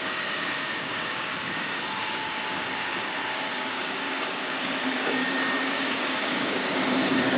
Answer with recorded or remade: remade